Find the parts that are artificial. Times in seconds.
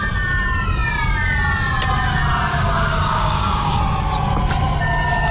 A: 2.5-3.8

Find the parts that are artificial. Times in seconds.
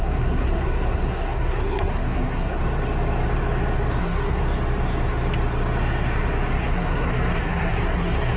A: 0.0-2.6; 4.0-4.4; 6.5-8.4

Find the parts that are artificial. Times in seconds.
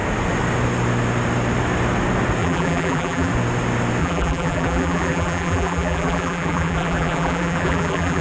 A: 2.4-3.3; 4.0-8.2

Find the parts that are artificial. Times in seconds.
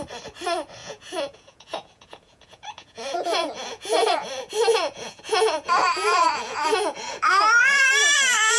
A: 0.8-4.3; 4.7-7.9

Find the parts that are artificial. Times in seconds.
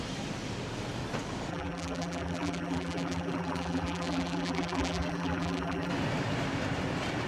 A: 1.5-5.9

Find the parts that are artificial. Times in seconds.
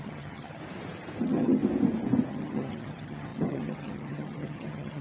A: 0.0-0.6; 1.2-1.6; 2.3-5.0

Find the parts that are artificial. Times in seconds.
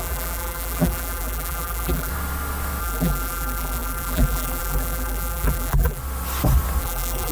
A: 0.0-2.1; 2.8-6.0; 6.8-7.3